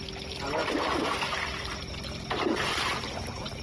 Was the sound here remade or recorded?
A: remade